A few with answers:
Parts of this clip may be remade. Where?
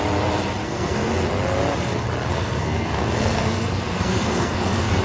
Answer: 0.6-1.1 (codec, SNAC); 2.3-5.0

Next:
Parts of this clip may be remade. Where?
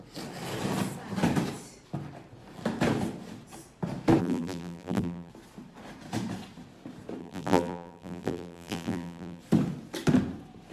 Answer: 4.2-5.3 (vocoder, BigVGAN v2); 7.2-9.4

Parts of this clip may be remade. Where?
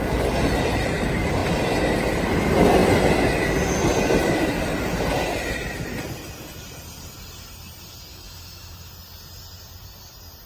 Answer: 8.1-8.9 (autoencoder, DAC-VAE)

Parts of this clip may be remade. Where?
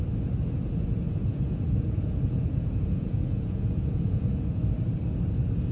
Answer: 1.2-4.6 (vocoder, Vocos)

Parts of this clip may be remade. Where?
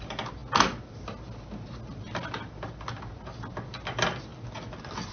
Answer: none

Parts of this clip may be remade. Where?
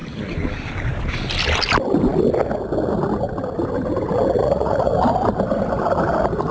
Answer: 4.4-4.9 (vocoder, Vocos)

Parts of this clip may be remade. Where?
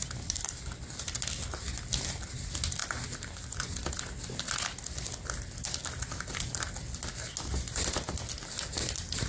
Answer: 0.0-0.7 (vocoder, BigVGAN v2)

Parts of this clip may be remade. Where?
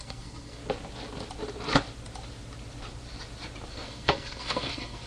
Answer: 0.0-0.6 (codec, SNAC); 3.7-5.1